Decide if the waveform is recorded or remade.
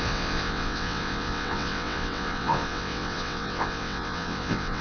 remade